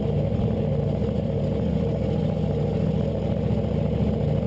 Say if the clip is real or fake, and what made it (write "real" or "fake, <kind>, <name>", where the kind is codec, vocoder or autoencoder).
real